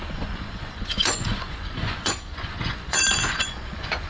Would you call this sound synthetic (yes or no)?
yes